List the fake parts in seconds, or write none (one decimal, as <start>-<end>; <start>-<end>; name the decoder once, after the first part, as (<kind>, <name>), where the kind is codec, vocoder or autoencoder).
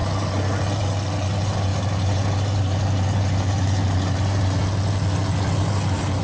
none